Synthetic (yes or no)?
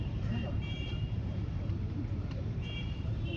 yes